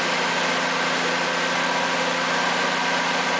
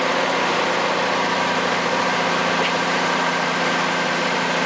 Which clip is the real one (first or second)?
first